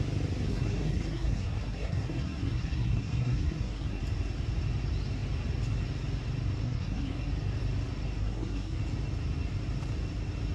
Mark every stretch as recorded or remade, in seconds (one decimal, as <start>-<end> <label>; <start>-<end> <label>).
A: 0.0-0.5 recorded; 0.5-4.0 remade; 4.0-6.6 recorded; 6.6-7.3 remade; 7.3-8.2 recorded; 8.2-8.8 remade; 8.8-10.5 recorded